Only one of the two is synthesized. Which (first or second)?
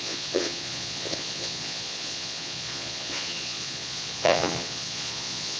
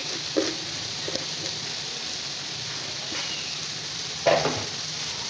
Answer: first